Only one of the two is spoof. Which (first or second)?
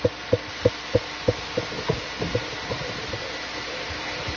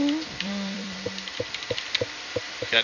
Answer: second